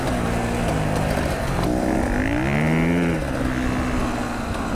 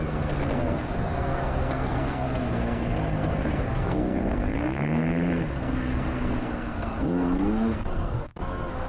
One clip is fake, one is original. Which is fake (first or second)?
second